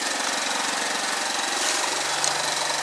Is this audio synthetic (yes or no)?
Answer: no